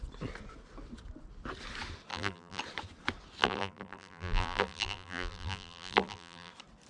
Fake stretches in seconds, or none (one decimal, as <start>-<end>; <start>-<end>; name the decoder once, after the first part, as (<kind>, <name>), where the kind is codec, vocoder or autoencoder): 2.1-2.6 (vocoder, BigVGAN v2); 3.4-6.5